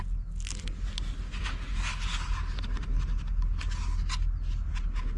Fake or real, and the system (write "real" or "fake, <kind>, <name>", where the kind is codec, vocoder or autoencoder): real